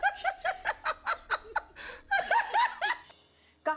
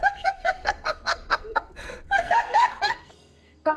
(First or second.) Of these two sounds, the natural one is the first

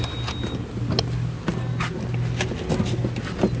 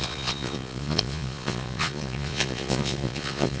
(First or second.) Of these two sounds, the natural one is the first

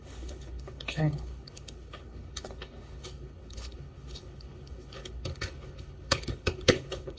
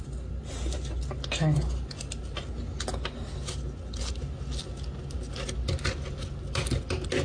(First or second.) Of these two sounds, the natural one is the second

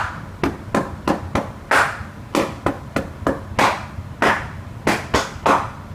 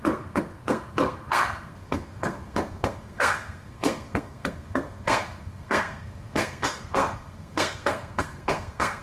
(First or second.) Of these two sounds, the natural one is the first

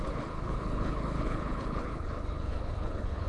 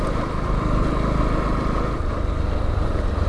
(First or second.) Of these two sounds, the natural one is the second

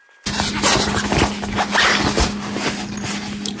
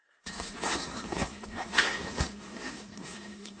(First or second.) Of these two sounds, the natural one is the first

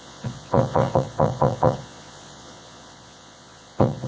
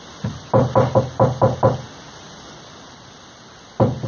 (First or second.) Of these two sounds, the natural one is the second